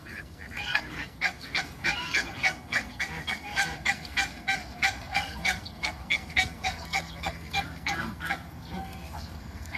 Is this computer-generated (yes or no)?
yes